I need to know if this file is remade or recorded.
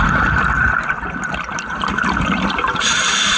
recorded